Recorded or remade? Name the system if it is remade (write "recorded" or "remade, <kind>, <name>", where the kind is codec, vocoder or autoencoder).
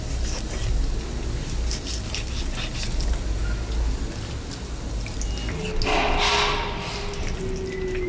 recorded